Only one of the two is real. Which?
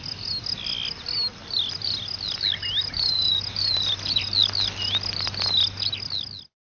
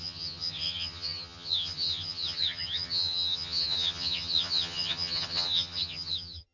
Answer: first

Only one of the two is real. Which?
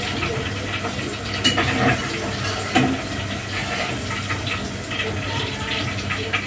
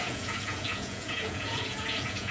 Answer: first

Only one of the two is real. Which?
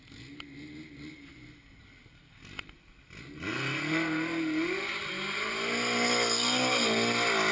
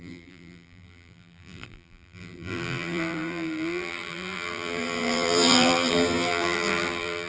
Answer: first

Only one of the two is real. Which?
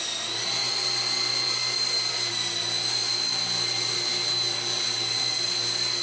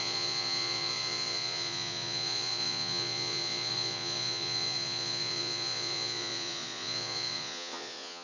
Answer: first